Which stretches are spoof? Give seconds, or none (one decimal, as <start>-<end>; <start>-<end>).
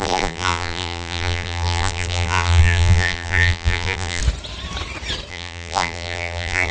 0.0-4.2; 5.3-6.7